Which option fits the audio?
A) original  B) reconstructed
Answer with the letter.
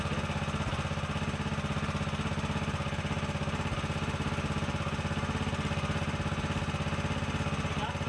A